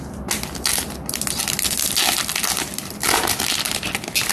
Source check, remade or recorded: recorded